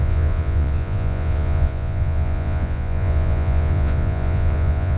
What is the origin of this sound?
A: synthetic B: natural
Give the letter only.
A